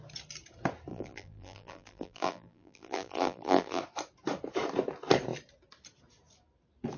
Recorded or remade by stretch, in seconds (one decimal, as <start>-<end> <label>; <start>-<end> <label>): 0.0-0.9 recorded; 0.9-3.8 remade; 3.8-7.0 recorded